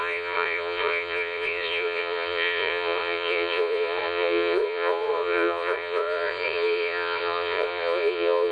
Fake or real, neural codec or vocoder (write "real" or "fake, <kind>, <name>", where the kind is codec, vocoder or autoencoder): fake, vocoder, Vocos